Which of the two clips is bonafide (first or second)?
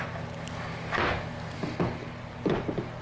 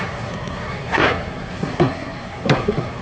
first